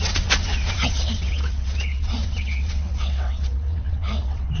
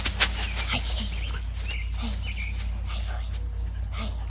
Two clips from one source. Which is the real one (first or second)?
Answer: second